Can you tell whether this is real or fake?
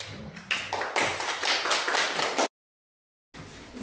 real